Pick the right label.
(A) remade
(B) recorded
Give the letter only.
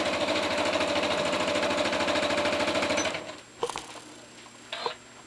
B